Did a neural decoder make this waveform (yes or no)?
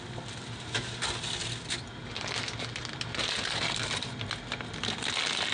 no